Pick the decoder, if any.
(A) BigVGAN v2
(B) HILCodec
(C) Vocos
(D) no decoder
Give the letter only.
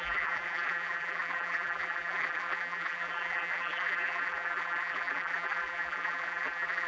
A